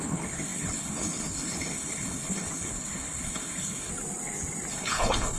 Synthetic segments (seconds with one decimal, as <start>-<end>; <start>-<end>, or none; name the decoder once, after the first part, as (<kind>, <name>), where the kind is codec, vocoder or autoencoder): 0.0-3.9 (codec, HILCodec); 4.7-5.4